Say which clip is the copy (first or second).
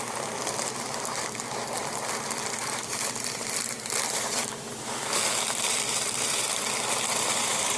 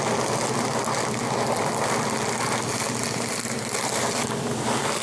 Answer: first